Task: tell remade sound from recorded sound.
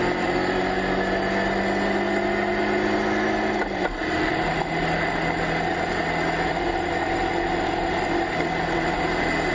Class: recorded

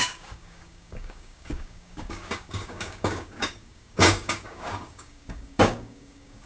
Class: remade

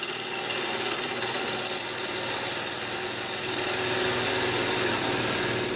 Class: recorded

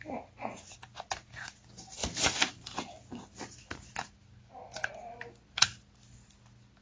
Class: recorded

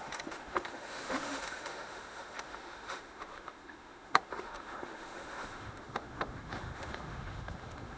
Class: remade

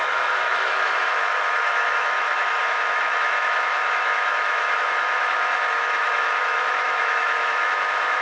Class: remade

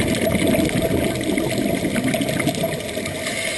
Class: recorded